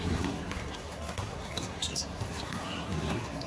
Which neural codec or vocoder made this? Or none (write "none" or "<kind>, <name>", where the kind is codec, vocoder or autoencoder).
codec, SNAC